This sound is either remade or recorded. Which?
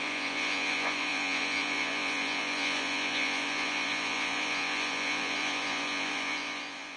remade